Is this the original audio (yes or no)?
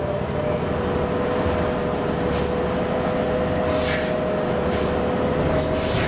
yes